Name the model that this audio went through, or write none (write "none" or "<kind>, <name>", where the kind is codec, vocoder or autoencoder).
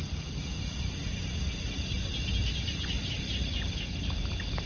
none